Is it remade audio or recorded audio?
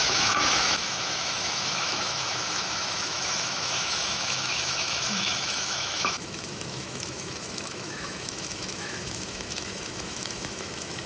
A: remade